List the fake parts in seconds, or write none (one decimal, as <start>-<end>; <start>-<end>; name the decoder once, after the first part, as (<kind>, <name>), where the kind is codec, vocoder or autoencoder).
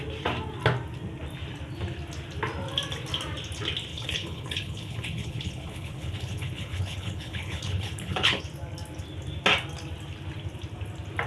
3.9-8.4 (codec, HILCodec)